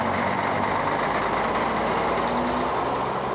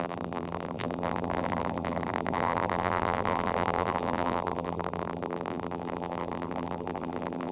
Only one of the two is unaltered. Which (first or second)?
first